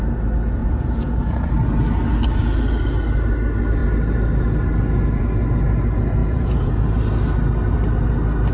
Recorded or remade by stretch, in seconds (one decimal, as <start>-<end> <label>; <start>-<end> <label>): 0.0-0.6 recorded; 0.6-1.5 remade; 1.5-6.2 recorded; 6.2-7.0 remade; 7.0-8.5 recorded